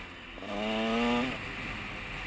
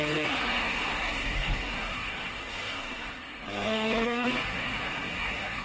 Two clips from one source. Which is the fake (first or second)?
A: second